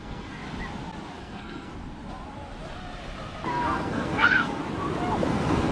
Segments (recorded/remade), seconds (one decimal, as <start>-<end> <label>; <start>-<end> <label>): 0.0-0.4 remade; 0.4-1.2 recorded; 1.2-1.7 remade; 1.7-3.5 recorded; 3.5-4.6 remade; 4.6-5.3 recorded; 5.3-5.7 remade